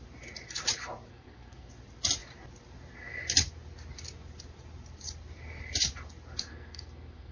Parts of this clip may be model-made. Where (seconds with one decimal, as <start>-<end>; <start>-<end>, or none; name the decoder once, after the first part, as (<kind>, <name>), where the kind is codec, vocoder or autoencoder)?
1.1-1.7 (codec, SNAC); 6.5-7.3